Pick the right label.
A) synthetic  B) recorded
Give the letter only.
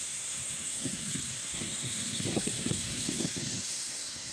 A